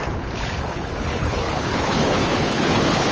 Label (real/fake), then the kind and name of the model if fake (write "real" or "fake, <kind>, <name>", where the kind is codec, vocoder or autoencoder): fake, codec, HILCodec